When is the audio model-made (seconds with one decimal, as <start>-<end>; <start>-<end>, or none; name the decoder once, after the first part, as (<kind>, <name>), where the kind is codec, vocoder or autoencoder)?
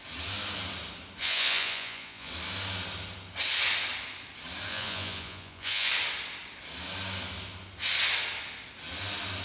1.2-2.3 (vocoder, Vocos); 4.7-5.9